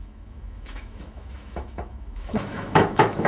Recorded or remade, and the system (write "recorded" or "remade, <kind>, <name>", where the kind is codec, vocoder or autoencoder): remade, autoencoder, DAC-VAE